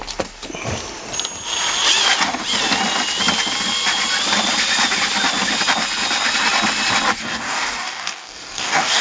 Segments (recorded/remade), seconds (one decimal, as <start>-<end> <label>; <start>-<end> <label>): 0.0-7.2 recorded; 7.2-9.0 remade